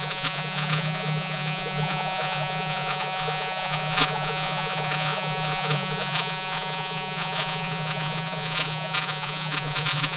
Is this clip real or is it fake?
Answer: fake